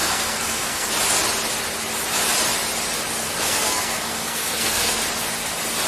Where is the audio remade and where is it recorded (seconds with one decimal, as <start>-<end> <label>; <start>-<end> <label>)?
0.0-0.9 remade; 0.9-3.2 recorded; 3.2-5.0 remade; 5.0-5.9 recorded